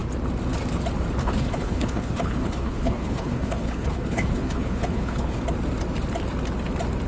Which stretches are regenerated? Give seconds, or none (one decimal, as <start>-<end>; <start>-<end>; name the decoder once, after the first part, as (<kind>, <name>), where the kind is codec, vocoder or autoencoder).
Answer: 1.2-5.4 (codec, HILCodec)